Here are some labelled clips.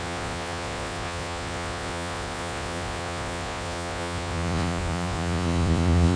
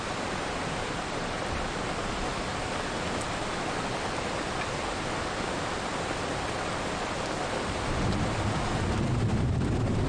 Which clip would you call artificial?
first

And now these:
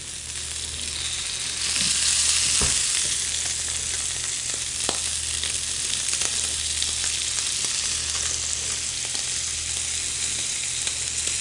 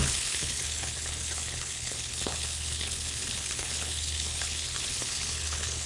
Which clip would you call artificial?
second